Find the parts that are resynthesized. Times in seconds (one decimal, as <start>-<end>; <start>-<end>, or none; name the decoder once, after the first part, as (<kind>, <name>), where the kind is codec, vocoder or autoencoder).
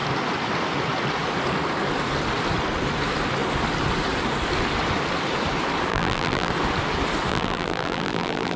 5.9-6.5 (vocoder, BigVGAN v2); 7.3-8.6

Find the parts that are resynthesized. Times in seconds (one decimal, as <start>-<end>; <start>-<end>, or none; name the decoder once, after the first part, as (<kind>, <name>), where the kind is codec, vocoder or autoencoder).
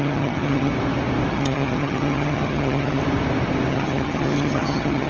0.0-0.7 (vocoder, HiFi-GAN); 1.3-3.0; 3.7-5.1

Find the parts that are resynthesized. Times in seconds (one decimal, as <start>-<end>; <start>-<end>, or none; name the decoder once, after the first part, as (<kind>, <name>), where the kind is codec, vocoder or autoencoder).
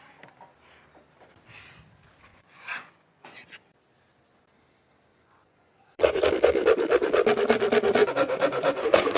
2.3-3.5 (vocoder, Vocos); 5.1-6.2; 8.0-9.2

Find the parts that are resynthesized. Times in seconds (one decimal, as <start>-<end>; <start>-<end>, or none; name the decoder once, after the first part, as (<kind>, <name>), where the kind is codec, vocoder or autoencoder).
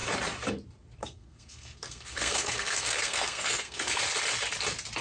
1.0-4.0 (codec, SNAC)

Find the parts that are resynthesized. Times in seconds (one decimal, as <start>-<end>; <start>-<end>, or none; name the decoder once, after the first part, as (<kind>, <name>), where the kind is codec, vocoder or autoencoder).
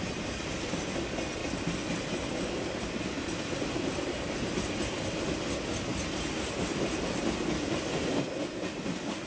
none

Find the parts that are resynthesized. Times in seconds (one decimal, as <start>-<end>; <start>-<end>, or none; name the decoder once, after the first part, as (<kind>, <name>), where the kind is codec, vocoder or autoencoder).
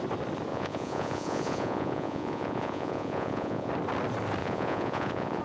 0.5-3.7 (vocoder, Vocos); 4.4-5.4